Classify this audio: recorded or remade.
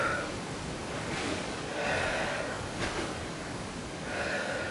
remade